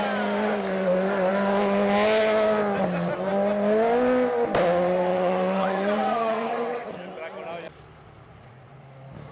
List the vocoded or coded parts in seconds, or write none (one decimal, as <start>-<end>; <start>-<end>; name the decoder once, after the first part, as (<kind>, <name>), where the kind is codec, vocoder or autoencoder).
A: 5.1-6.9 (vocoder, WaveNeXt)

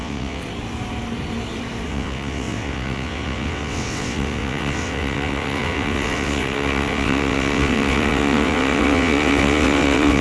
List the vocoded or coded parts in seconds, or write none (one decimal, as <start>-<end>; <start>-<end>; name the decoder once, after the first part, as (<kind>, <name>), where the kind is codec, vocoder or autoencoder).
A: 0.0-0.4 (vocoder, WaveNeXt); 1.9-10.2

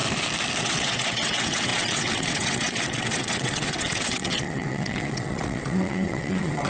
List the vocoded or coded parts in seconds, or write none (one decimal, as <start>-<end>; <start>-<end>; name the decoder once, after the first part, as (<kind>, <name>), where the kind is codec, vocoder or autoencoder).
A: 0.6-6.7 (vocoder, WaveNeXt)

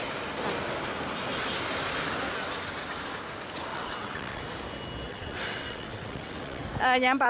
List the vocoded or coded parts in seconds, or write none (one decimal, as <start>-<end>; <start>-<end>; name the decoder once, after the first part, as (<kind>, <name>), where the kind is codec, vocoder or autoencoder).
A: 3.7-4.4 (vocoder, WaveNeXt); 5.1-6.6

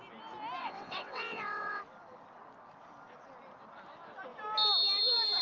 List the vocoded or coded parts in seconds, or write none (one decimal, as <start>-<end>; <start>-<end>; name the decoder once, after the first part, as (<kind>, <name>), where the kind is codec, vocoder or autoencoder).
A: 0.6-1.8 (vocoder, WaveNeXt)

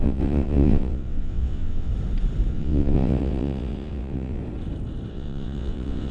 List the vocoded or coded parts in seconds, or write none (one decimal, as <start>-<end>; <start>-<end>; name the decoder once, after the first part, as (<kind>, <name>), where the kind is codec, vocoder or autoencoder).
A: 0.0-1.9 (vocoder, WaveNeXt); 2.5-4.4; 5.1-6.1

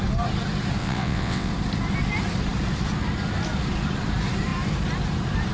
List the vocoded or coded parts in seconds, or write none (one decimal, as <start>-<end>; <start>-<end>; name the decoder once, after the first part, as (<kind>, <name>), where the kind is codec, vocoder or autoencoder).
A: 0.8-1.5 (vocoder, WaveNeXt)

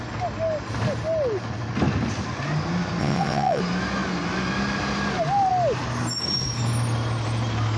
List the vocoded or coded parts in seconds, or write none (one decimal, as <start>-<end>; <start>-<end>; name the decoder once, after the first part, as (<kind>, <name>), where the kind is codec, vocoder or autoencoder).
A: 3.0-3.6 (vocoder, WaveNeXt)